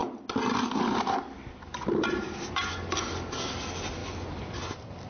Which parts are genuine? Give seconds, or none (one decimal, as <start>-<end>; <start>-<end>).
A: 0.0-5.1